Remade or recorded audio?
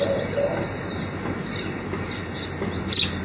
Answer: recorded